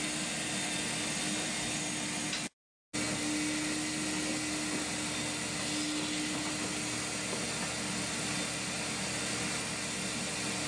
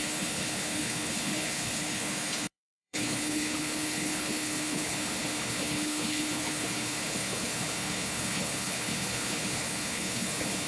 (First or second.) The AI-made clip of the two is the second